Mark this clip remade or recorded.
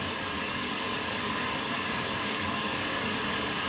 remade